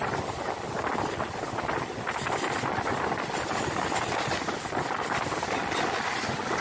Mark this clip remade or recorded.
recorded